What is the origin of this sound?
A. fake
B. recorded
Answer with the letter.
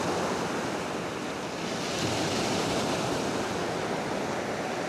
B